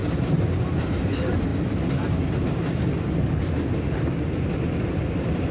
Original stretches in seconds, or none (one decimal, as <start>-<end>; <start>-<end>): 1.5-4.8